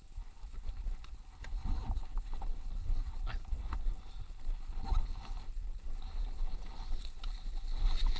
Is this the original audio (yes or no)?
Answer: yes